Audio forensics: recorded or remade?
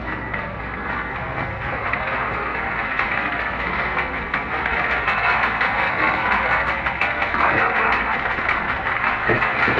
remade